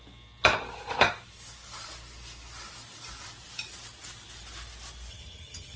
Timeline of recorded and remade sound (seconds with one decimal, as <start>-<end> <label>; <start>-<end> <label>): 0.0-5.1 recorded; 5.1-5.8 remade